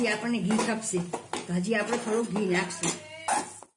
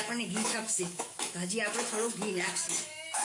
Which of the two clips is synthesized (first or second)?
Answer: second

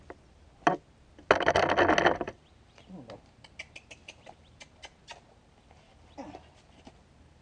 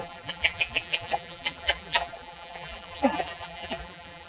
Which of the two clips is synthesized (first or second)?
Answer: second